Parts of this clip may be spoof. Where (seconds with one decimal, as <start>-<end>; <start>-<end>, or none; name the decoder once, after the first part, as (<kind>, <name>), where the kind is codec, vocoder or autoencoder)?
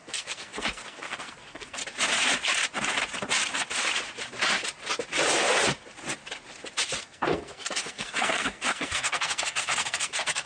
0.0-1.8 (codec, SNAC); 7.0-10.5